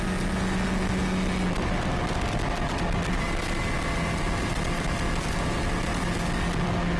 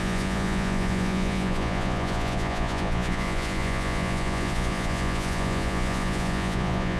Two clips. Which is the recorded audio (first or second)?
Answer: first